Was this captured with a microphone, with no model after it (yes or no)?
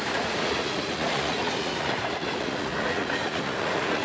no